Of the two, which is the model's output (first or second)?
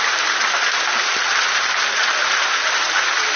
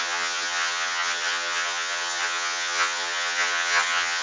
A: second